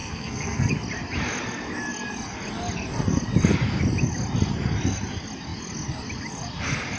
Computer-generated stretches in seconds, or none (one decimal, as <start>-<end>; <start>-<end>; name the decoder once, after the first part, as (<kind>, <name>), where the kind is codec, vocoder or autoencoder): 0.0-0.7 (codec, SNAC)